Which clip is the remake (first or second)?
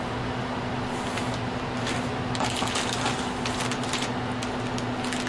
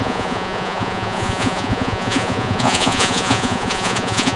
second